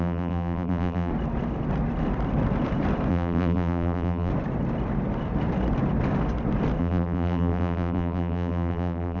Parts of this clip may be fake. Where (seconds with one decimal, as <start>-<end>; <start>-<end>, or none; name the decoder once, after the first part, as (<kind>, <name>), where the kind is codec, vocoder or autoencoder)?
0.0-1.1 (vocoder, BigVGAN v2); 3.1-4.3; 6.8-9.2